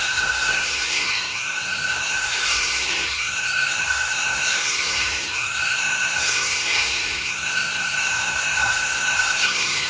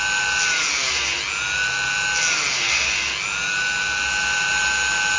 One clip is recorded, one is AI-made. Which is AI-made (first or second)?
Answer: first